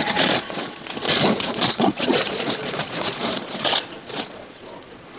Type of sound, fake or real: fake